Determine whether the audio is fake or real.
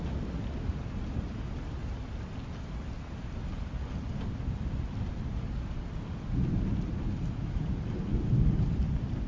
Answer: real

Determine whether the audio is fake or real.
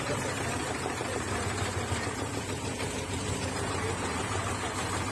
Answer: fake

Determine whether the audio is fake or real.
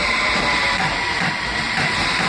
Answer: real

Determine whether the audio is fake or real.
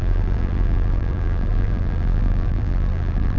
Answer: fake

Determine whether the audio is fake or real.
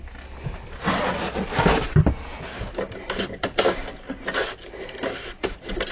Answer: real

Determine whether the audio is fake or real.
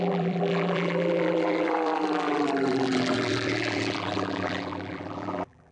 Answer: fake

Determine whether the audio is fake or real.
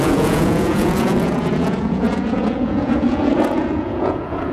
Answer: fake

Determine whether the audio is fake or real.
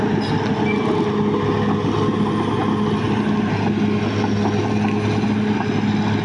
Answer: real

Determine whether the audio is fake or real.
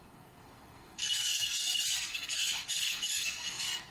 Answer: fake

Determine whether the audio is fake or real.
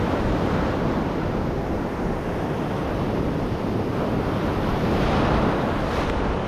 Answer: real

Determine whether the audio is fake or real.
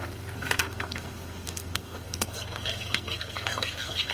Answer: fake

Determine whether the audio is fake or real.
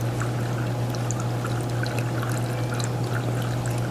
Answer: real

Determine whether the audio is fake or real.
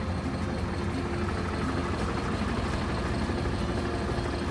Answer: real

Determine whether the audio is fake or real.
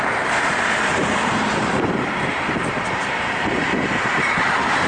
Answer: fake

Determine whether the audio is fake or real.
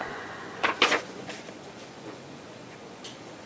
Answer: fake